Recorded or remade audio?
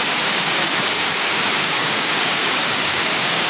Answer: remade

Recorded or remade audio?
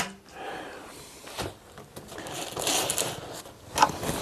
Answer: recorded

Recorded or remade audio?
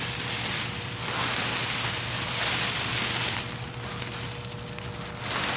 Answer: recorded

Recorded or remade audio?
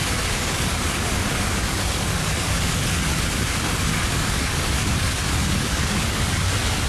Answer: remade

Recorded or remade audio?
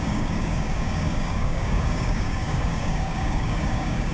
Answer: remade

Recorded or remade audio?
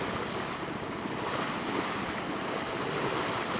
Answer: recorded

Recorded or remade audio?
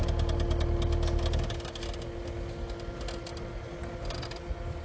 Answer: recorded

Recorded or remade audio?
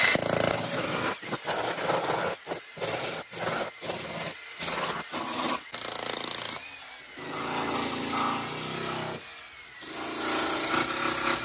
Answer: recorded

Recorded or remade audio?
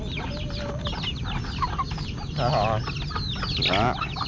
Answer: recorded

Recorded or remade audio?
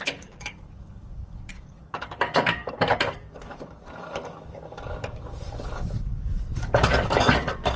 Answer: remade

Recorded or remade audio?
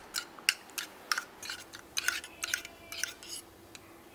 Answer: recorded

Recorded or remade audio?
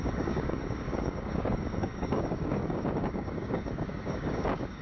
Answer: remade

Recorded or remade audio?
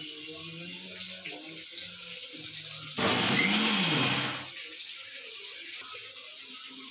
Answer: recorded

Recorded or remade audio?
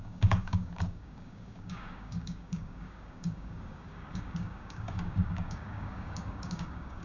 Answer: remade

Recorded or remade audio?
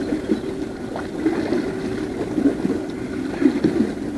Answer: recorded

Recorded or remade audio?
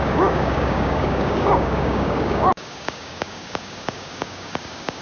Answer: remade